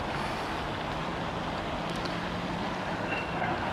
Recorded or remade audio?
recorded